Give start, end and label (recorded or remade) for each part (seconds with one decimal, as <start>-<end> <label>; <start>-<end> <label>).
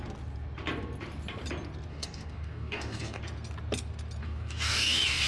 0.0-1.9 recorded; 1.9-3.2 remade; 3.2-4.2 recorded; 4.2-5.3 remade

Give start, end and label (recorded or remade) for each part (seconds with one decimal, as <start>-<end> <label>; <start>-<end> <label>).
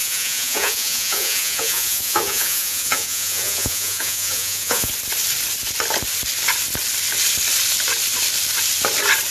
0.0-4.9 remade; 4.9-9.3 recorded